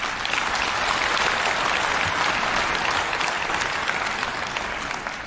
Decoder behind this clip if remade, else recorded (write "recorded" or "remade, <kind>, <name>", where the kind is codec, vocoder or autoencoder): recorded